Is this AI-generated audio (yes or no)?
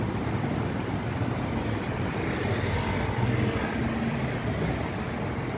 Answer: no